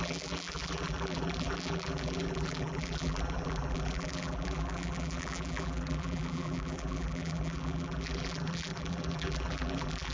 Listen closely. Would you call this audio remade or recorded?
remade